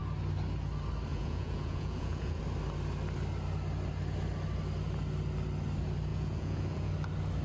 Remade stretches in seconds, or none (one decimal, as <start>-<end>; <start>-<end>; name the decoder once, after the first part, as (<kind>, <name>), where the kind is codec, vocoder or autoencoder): 1.1-2.4 (vocoder, Vocos); 6.1-6.9